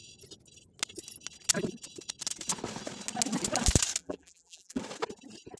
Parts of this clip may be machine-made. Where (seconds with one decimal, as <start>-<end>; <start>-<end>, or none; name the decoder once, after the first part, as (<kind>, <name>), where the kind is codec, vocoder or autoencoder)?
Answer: 4.0-4.8 (vocoder, BigVGAN v2)